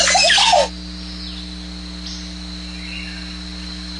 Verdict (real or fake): real